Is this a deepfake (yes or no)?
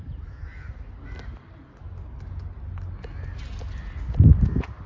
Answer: no